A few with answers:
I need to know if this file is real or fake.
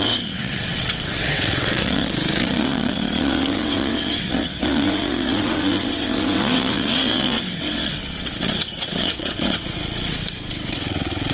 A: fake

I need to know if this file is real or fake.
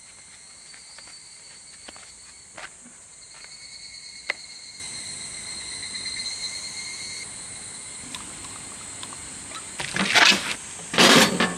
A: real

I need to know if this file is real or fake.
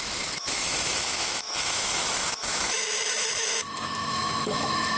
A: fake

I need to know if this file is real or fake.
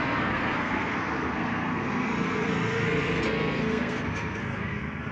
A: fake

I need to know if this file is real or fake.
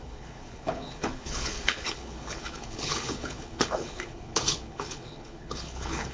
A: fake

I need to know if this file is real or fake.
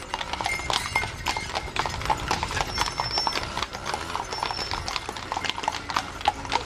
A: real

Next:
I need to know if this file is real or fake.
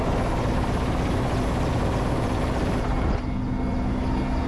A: real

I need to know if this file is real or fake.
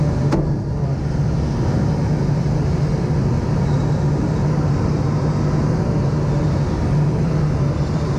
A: real